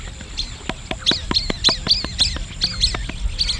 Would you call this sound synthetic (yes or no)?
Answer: no